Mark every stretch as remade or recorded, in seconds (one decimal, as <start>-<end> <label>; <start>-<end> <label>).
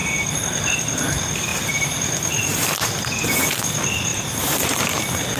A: 0.0-1.5 recorded; 1.5-2.9 remade; 2.9-4.1 recorded; 4.1-5.4 remade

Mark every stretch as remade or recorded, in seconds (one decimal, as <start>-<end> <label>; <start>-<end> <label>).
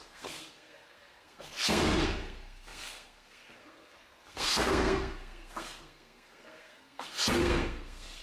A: 0.0-8.2 remade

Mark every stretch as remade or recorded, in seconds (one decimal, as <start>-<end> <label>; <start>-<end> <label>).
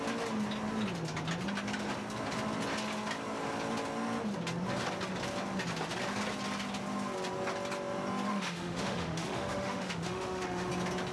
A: 0.0-8.3 recorded; 8.3-10.7 remade; 10.7-11.1 recorded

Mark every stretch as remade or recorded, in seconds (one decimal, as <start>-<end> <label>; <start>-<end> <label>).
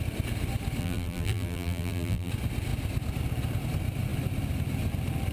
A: 0.0-0.8 recorded; 0.8-2.3 remade; 2.3-5.3 recorded